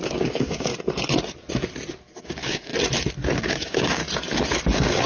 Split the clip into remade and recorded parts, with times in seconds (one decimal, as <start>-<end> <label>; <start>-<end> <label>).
0.0-0.7 remade; 0.7-2.2 recorded; 2.2-2.7 remade; 2.7-3.4 recorded; 3.4-4.0 remade; 4.0-5.1 recorded